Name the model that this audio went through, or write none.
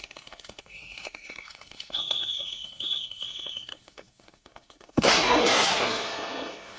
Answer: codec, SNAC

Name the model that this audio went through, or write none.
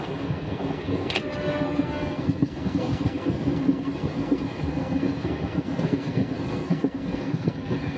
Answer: codec, SNAC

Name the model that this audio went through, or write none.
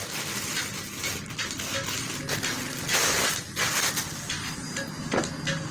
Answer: none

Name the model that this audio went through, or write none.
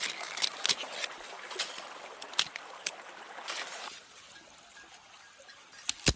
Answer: none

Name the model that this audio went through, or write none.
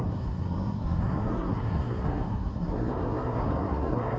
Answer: codec, SNAC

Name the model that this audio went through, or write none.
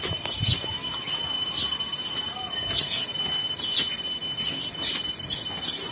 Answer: none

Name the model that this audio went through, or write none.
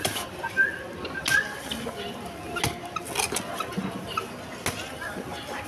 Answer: none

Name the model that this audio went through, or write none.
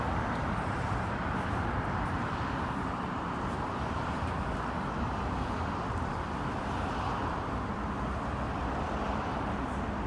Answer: vocoder, BigVGAN v2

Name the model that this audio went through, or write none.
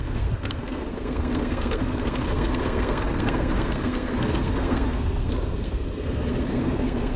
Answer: codec, SNAC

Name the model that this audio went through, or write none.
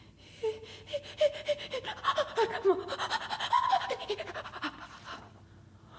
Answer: none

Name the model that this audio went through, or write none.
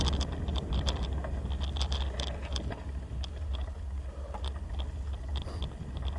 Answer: none